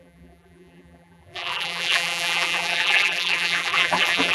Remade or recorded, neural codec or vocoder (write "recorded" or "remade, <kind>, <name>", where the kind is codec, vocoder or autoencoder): remade, vocoder, BigVGAN v2